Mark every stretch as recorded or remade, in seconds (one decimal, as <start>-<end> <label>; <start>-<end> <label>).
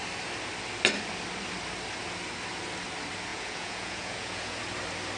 0.0-3.3 recorded; 3.3-4.6 remade; 4.6-5.2 recorded